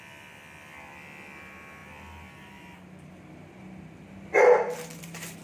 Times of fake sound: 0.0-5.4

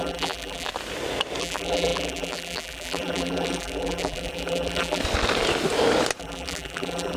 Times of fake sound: 0.0-0.7; 1.4-5.0; 6.2-7.2

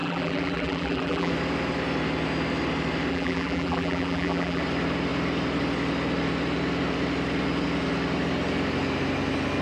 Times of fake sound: 0.0-1.3; 3.1-4.6

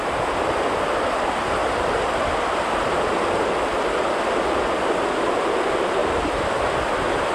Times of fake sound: 6.0-6.5

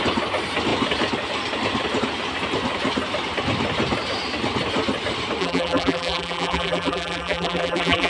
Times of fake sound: 5.4-8.1

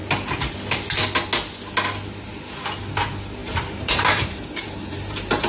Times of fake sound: 3.4-5.5

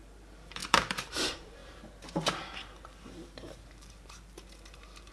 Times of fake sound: 0.0-5.1